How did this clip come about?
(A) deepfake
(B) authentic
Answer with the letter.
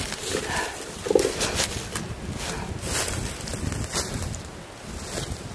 B